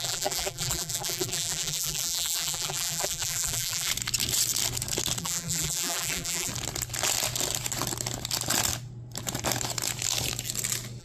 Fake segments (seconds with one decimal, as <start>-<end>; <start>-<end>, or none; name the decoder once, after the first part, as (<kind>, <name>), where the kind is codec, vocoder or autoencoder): 0.0-3.9 (vocoder, BigVGAN v2); 5.2-6.5